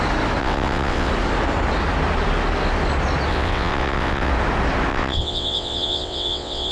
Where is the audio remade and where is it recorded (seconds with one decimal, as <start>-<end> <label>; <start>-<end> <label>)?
0.0-0.4 recorded; 0.4-1.1 remade; 1.1-3.3 recorded; 3.3-4.3 remade; 4.3-4.9 recorded; 4.9-6.7 remade